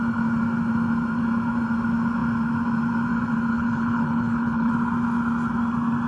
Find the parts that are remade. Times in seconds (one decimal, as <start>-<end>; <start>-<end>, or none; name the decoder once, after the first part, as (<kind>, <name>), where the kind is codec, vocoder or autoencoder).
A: 3.5-4.7 (codec, HILCodec)